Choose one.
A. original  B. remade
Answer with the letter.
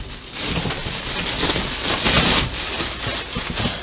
A